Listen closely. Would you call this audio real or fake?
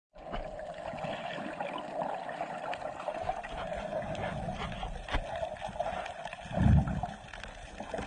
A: real